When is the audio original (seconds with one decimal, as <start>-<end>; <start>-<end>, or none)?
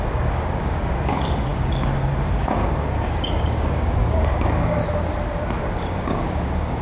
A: 4.8-5.6